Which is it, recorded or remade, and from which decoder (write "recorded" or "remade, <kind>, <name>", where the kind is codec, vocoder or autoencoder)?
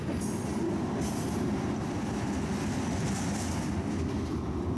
recorded